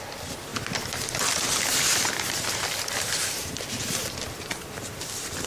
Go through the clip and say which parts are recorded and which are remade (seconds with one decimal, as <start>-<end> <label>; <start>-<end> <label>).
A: 0.0-5.5 recorded